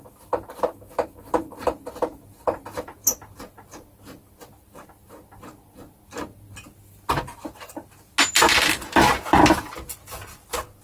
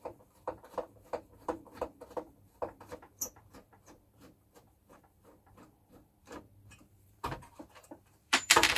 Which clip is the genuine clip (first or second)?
first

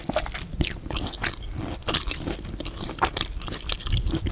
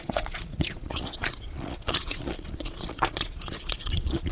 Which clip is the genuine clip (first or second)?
first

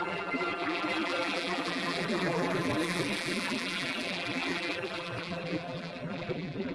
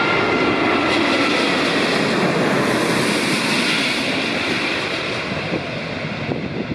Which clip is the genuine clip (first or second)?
second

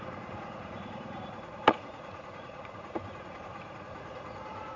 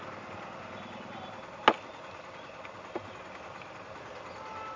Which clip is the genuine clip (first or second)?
second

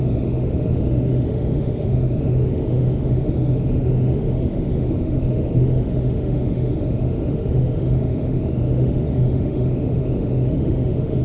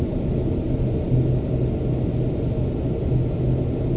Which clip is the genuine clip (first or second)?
second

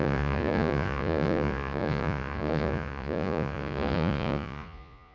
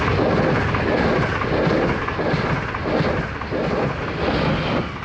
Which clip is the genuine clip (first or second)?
second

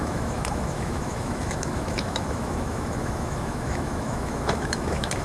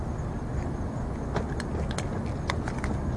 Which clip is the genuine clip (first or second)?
second